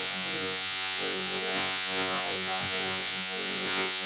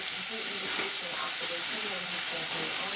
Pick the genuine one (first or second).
second